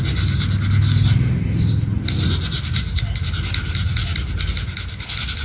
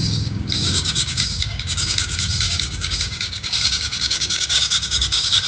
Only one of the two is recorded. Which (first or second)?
first